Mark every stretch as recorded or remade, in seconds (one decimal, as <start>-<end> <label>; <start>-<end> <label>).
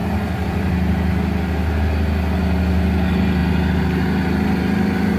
0.0-0.7 remade; 0.7-5.2 recorded